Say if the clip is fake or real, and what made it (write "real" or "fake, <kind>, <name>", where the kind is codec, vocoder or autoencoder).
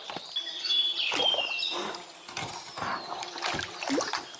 real